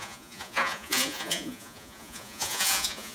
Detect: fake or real fake